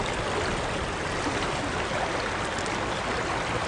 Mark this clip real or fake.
real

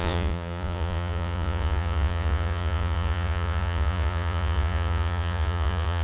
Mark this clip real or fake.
fake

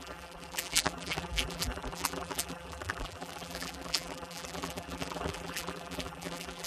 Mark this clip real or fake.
fake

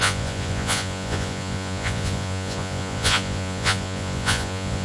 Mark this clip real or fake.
fake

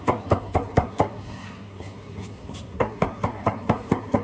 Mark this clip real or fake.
fake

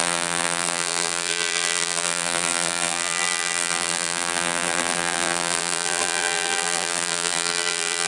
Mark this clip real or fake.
fake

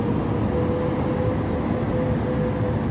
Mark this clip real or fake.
real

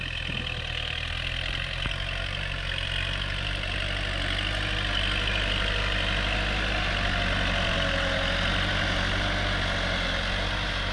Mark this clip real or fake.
real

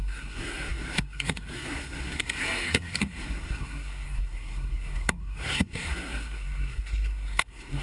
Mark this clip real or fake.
fake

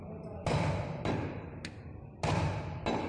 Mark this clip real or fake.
real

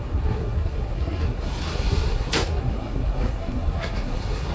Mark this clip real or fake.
fake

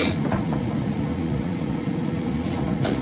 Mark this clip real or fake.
fake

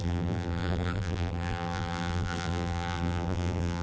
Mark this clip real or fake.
fake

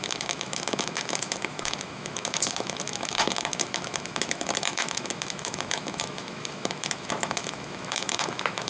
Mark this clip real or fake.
fake